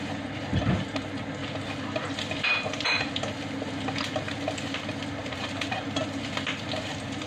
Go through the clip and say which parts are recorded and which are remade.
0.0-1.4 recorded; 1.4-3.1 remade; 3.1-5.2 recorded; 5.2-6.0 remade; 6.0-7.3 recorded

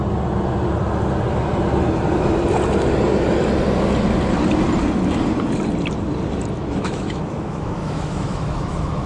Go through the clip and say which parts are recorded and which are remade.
0.0-6.6 recorded; 6.6-9.1 remade

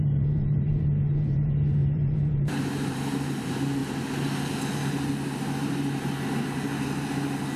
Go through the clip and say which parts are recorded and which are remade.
0.0-3.8 remade; 3.8-7.6 recorded

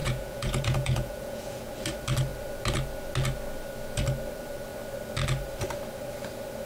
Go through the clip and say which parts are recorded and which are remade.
0.0-1.7 remade; 1.7-6.7 recorded

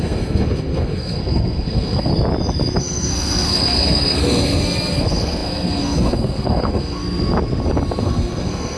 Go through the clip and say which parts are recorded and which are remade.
0.0-2.1 remade; 2.1-2.8 recorded; 2.8-7.0 remade; 7.0-8.0 recorded; 8.0-8.8 remade

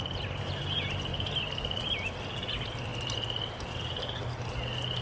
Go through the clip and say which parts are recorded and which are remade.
0.0-5.0 recorded

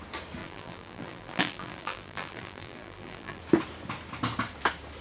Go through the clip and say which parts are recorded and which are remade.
0.0-0.4 recorded; 0.4-3.4 remade; 3.4-5.0 recorded

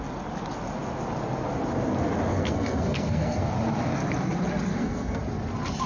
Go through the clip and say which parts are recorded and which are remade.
0.0-2.3 recorded; 2.3-3.5 remade; 3.5-4.7 recorded; 4.7-5.2 remade; 5.2-5.9 recorded